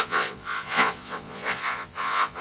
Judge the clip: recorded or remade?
remade